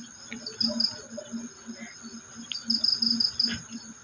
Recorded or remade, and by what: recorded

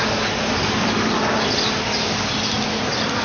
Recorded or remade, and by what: recorded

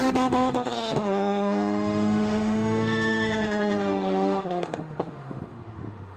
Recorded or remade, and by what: remade, autoencoder, DAC-VAE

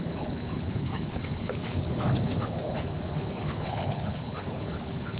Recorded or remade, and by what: remade, codec, HILCodec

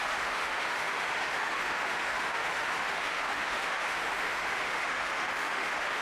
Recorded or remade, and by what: remade, autoencoder, DAC-VAE